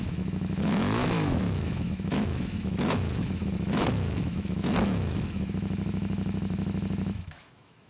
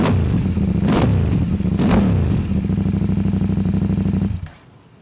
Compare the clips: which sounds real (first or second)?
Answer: second